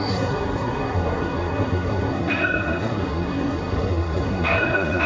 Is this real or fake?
fake